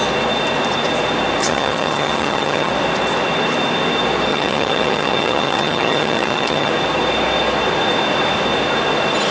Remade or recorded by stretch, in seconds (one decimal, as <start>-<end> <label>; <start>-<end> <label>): 0.0-1.4 recorded; 1.4-2.7 remade; 2.7-4.3 recorded; 4.3-6.7 remade; 6.7-9.3 recorded